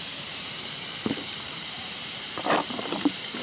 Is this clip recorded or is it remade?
remade